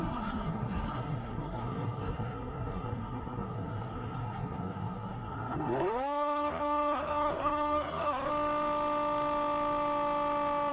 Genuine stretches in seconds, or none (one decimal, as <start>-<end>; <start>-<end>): 8.3-10.7